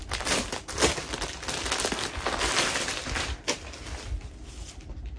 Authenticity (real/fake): real